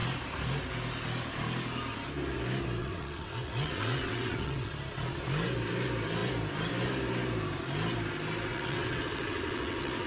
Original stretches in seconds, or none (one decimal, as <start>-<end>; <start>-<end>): 0.0-2.8; 4.7-8.5